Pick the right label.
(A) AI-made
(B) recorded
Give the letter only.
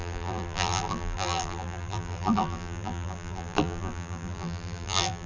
A